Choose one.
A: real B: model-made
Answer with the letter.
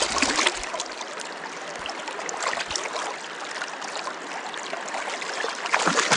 A